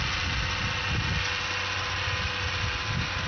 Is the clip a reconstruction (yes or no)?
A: no